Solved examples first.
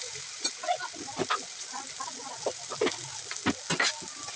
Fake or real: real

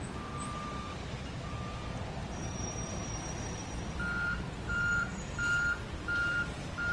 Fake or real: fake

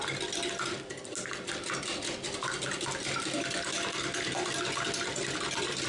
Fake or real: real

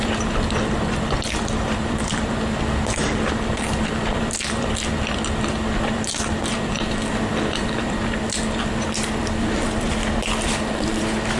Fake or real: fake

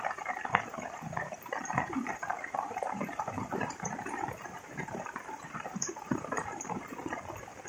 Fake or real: fake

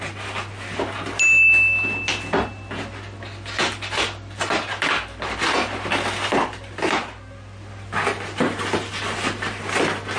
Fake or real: real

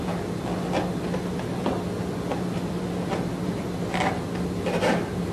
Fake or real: real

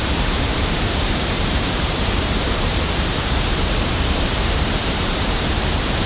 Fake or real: fake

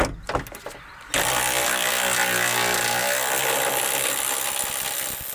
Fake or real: real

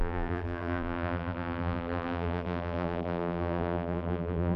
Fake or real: fake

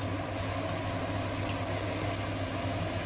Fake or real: real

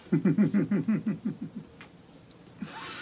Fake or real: real